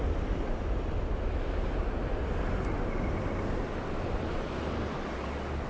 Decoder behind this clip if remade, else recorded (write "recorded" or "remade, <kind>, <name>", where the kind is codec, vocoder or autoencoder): recorded